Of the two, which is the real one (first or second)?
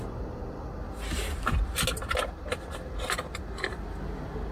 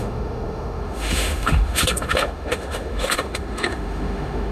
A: first